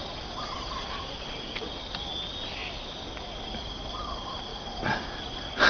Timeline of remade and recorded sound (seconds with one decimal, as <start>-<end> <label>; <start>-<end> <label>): 0.0-5.7 recorded